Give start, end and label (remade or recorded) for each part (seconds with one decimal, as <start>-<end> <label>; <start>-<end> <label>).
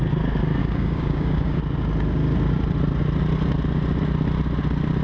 0.0-0.6 recorded; 0.6-1.6 remade; 1.6-5.0 recorded